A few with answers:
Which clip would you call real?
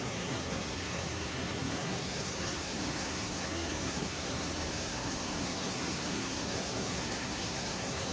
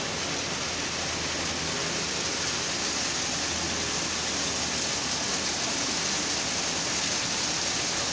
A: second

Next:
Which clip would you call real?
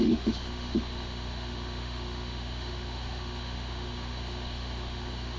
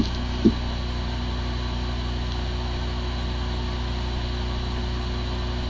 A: second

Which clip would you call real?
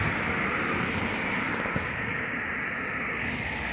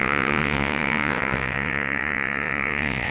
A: first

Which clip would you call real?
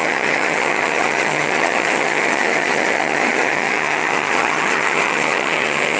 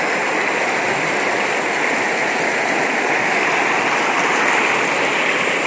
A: second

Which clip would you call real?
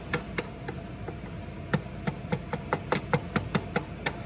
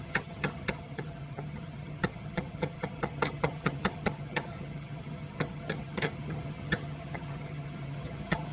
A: first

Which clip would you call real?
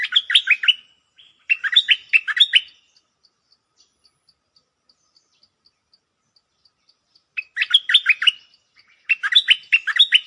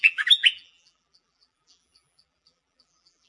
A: first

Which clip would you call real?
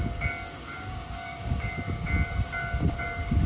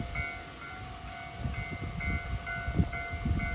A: second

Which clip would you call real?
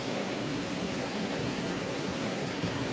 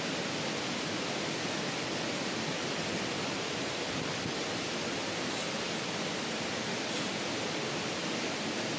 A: second